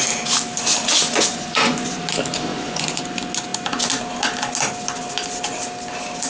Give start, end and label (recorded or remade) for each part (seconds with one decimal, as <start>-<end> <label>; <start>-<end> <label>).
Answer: 0.0-1.3 recorded; 1.3-2.0 remade; 2.0-2.5 recorded; 2.5-3.0 remade; 3.0-6.3 recorded